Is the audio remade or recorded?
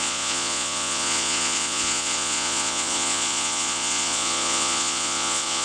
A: remade